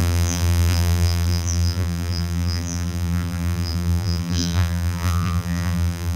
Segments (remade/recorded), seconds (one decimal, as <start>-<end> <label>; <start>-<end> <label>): 0.0-6.2 remade